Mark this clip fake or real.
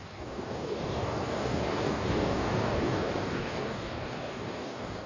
fake